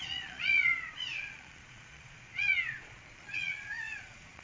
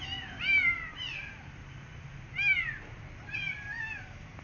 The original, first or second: second